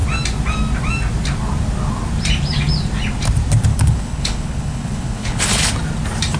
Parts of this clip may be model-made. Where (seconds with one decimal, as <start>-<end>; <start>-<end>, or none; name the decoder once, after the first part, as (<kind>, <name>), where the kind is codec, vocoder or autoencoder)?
3.7-5.7 (codec, HILCodec)